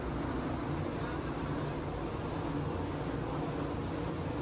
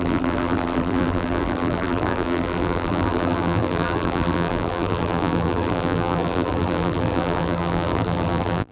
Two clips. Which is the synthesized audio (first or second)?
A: second